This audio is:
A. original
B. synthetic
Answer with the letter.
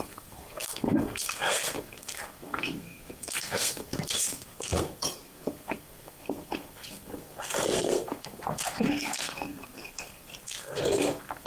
B